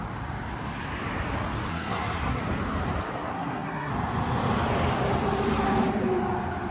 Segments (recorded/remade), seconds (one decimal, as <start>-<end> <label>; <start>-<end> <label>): 0.0-1.7 recorded; 1.7-2.4 remade; 2.4-3.3 recorded; 3.3-3.9 remade; 3.9-6.7 recorded